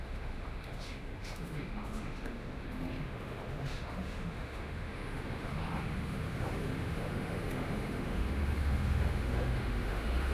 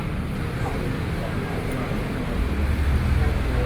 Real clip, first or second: second